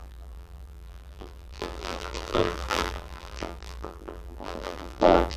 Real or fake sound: fake